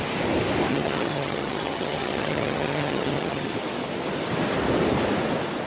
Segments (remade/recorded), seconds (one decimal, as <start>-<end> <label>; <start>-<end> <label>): 0.0-0.7 recorded; 0.7-3.5 remade; 3.5-5.7 recorded